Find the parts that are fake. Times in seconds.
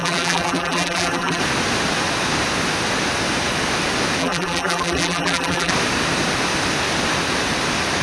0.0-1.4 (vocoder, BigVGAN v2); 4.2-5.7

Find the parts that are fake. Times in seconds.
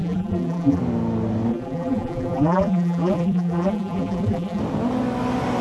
0.0-0.8 (vocoder, BigVGAN v2); 1.5-4.6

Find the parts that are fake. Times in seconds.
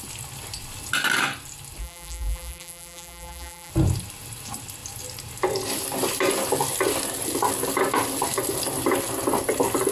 1.8-3.7 (vocoder, BigVGAN v2)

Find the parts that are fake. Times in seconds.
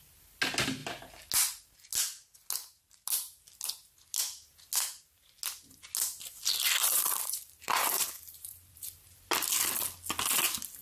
6.8-9.2 (vocoder, BigVGAN v2)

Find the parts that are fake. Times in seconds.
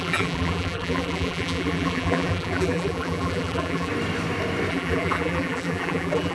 0.0-3.9 (vocoder, BigVGAN v2); 4.7-6.3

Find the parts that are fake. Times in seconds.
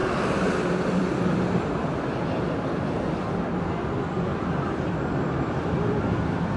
0.0-6.6 (vocoder, BigVGAN v2)